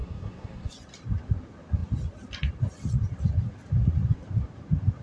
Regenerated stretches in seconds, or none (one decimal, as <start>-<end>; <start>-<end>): 0.0-0.7